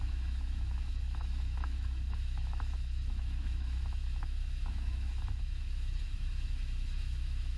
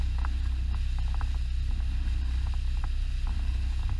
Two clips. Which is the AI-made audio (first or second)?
first